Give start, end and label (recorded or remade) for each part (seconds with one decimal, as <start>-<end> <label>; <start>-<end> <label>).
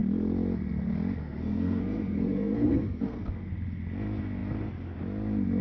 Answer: 0.0-1.2 recorded; 1.2-3.5 remade; 3.5-5.6 recorded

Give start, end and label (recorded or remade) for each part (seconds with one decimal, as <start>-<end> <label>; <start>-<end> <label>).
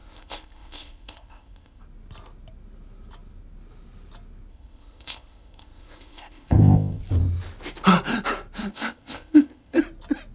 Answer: 0.0-1.8 remade; 1.8-4.5 recorded; 4.5-7.0 remade; 7.0-8.7 recorded; 8.7-9.8 remade; 9.8-10.3 recorded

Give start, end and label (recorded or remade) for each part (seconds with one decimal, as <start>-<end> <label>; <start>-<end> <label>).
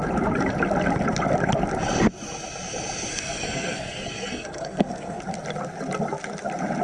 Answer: 0.0-3.1 recorded; 3.1-5.2 remade; 5.2-6.8 recorded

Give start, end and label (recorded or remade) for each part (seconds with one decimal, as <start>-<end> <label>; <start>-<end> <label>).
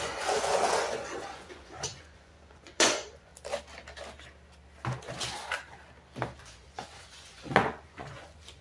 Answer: 0.0-3.3 remade; 3.3-6.4 recorded; 6.4-8.6 remade